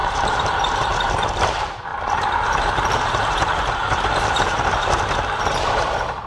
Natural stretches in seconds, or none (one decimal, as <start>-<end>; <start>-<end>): none